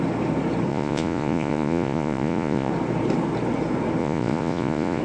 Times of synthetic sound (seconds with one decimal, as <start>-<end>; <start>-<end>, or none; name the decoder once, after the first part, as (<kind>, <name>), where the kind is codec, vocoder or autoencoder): 0.7-2.7 (vocoder, Vocos); 4.0-5.0